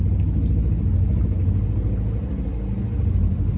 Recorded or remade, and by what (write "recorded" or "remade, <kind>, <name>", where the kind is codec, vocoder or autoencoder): recorded